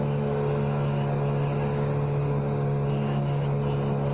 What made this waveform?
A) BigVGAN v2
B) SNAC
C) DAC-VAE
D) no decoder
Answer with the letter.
D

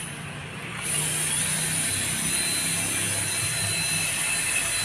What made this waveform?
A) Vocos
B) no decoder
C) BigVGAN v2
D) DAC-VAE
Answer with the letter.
B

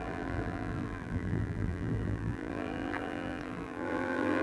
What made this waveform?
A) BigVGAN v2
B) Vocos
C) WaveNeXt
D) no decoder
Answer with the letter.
A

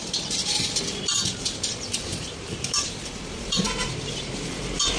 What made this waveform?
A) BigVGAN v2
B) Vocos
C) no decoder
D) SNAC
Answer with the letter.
A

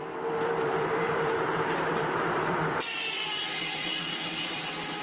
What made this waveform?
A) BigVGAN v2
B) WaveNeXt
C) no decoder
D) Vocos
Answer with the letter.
A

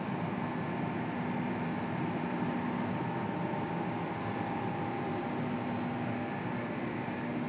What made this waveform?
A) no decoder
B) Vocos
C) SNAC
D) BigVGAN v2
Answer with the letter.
A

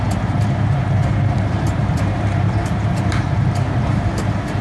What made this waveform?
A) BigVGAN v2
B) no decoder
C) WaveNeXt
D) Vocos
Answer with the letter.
A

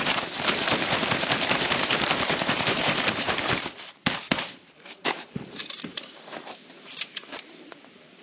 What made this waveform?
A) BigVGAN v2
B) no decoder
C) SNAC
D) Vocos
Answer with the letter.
A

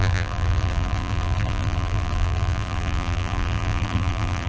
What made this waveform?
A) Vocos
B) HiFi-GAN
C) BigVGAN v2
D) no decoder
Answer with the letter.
C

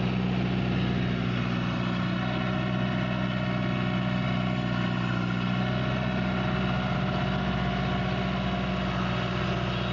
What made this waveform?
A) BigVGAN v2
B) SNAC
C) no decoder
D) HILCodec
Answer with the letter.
C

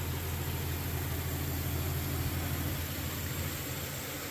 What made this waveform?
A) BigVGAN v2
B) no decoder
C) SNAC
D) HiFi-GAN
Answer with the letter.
B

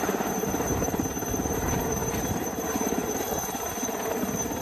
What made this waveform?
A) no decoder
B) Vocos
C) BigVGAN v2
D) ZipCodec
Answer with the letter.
C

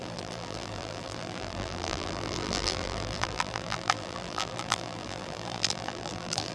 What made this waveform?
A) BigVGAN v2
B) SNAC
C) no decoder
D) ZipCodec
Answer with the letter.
A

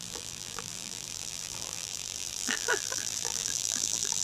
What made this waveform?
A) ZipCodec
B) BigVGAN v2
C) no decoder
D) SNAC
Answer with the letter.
B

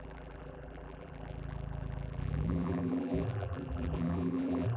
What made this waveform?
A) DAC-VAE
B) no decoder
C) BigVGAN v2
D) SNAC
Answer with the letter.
C